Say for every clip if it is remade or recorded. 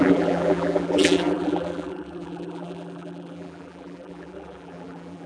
remade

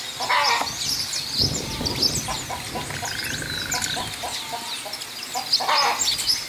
recorded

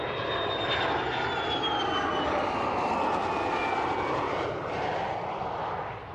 recorded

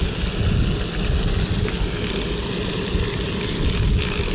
recorded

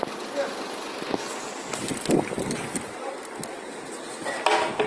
recorded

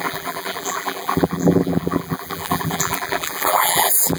remade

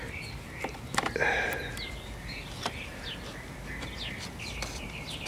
recorded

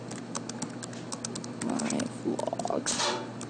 recorded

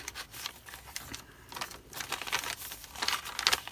recorded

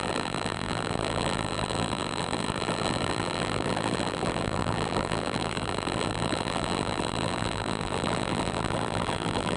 remade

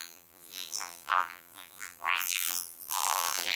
remade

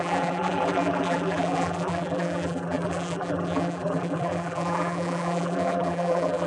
remade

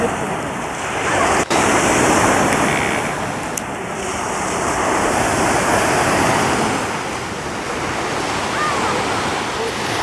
recorded